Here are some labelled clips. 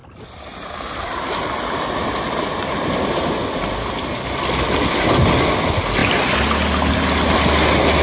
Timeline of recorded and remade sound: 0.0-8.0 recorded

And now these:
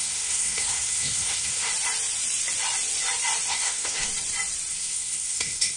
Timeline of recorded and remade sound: 0.0-1.7 remade; 1.7-3.5 recorded; 3.5-4.1 remade; 4.1-4.7 recorded; 4.7-5.8 remade